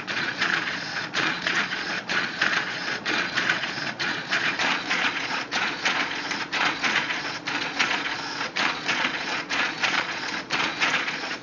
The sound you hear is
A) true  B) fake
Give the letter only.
B